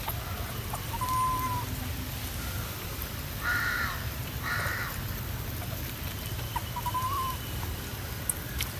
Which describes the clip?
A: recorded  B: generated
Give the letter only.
A